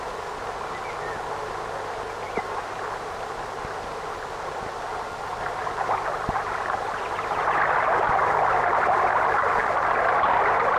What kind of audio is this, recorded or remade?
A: recorded